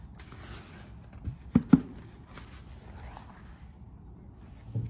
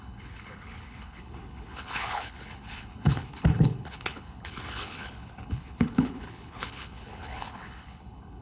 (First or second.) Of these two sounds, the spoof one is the second